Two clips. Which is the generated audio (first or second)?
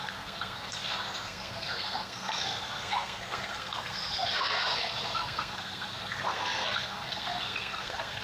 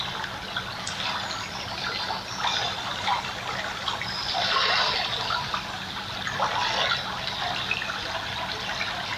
first